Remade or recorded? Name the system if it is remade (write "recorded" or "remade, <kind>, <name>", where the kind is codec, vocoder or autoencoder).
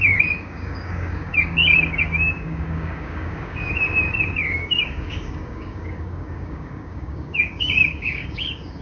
remade, codec, DAC